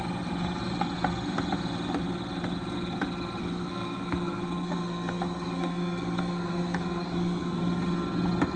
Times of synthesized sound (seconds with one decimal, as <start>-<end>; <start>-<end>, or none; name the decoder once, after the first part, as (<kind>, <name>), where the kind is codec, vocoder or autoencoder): 3.4-7.6 (codec, SNAC)